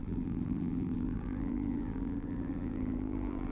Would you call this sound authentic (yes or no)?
no